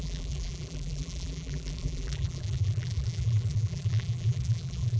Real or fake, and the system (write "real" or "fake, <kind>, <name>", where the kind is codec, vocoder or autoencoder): fake, vocoder, BigVGAN v2